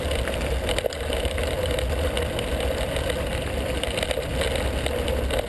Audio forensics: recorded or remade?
recorded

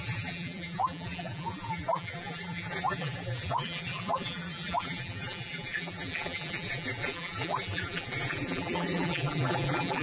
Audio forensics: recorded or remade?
remade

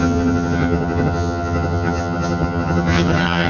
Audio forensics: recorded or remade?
remade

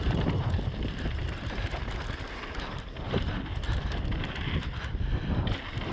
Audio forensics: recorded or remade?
recorded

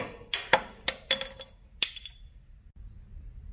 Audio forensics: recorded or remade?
recorded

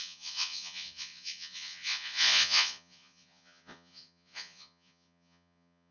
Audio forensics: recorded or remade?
remade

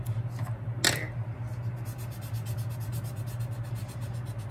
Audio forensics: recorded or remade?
recorded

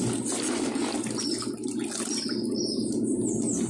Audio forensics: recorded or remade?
recorded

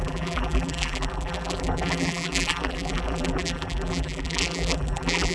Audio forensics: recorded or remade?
remade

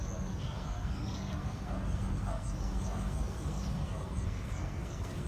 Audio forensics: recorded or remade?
remade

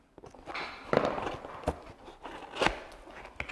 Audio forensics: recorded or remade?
recorded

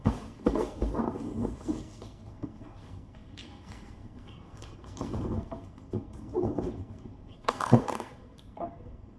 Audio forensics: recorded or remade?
remade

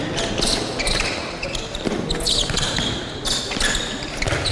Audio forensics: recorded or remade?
recorded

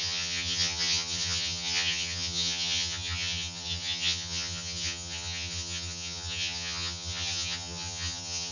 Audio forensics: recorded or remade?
remade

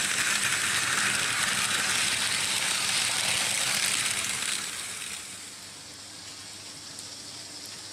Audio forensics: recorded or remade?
recorded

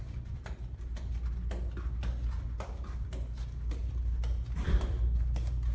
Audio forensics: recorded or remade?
recorded